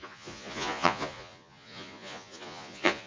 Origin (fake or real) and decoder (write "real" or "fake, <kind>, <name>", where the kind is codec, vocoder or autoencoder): fake, vocoder, Vocos